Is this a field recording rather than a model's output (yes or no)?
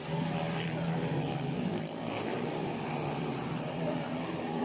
no